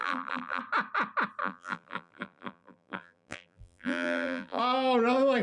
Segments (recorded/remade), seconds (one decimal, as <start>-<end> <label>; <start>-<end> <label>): 0.0-0.6 remade; 0.6-1.4 recorded; 1.4-4.6 remade; 4.6-5.4 recorded

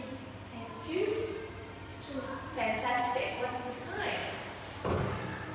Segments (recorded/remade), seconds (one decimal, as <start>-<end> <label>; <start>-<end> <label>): 0.0-1.9 remade; 1.9-2.9 recorded; 2.9-4.2 remade; 4.2-5.0 recorded; 5.0-5.5 remade

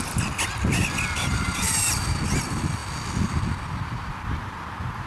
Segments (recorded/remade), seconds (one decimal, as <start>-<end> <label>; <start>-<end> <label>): 0.0-1.3 recorded; 1.3-2.2 remade; 2.2-5.1 recorded

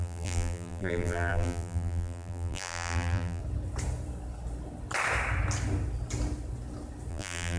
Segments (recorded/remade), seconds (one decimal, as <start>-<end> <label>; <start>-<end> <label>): 0.0-3.4 remade; 3.4-7.1 recorded; 7.1-7.6 remade

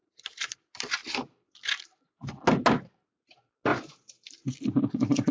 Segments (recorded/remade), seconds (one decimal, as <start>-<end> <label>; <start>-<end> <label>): 0.0-0.6 remade; 0.6-3.7 recorded; 3.7-4.3 remade; 4.3-5.3 recorded

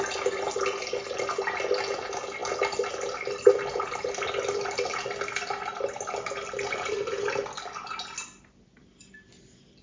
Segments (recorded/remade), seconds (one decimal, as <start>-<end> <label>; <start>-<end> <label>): 0.0-9.8 recorded